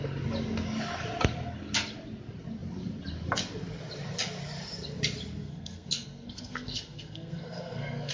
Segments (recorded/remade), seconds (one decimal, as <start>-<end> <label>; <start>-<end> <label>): 0.0-5.4 recorded; 5.4-8.1 remade